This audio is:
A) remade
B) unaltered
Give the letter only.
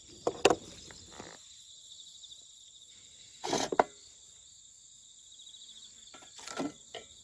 B